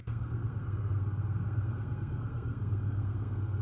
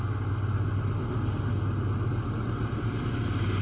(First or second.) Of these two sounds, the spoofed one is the first